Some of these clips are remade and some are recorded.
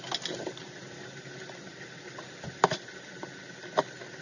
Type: recorded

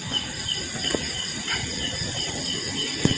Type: remade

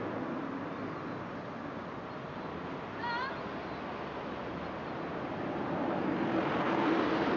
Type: recorded